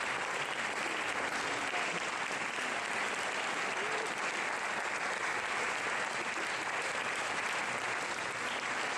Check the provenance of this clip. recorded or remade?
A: recorded